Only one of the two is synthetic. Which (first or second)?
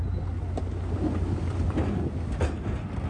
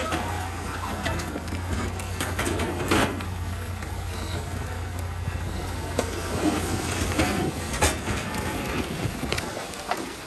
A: second